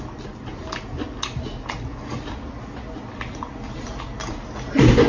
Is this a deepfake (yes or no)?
no